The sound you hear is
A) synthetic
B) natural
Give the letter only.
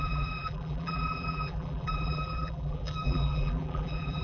A